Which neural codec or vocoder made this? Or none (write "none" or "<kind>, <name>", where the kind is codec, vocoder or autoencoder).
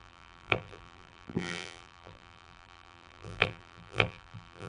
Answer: vocoder, BigVGAN v2